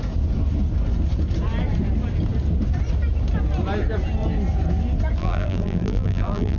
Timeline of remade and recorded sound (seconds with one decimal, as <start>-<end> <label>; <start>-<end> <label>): 0.0-5.2 recorded; 5.2-6.6 remade